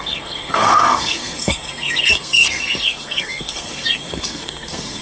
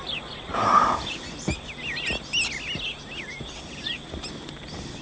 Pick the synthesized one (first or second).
first